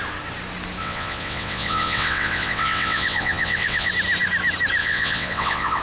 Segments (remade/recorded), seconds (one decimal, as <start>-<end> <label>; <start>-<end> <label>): 0.0-0.8 recorded; 0.8-3.9 remade; 3.9-4.8 recorded; 4.8-5.8 remade